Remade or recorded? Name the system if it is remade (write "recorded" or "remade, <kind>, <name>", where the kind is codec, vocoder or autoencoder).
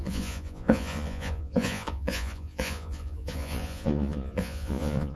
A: remade, vocoder, Vocos